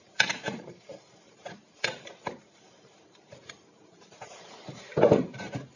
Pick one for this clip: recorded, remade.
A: remade